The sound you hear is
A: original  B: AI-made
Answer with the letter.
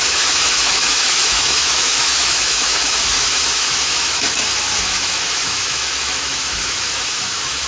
B